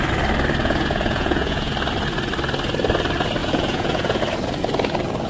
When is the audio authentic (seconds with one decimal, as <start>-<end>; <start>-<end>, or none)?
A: 0.0-0.6; 1.7-3.4; 4.2-5.3

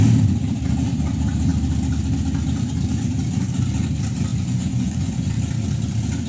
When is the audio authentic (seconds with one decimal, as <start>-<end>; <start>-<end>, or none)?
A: 0.0-4.3; 5.2-6.3

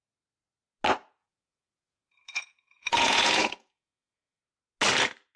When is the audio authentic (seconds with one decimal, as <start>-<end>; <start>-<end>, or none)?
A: 0.0-1.2; 4.4-5.4

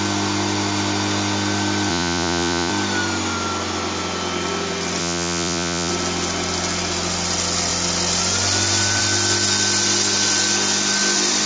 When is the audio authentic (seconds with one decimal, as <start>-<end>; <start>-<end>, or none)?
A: 0.0-1.9; 2.7-5.0; 5.9-11.5